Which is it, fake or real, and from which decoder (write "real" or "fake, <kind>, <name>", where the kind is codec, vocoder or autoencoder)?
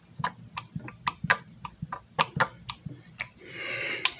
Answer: real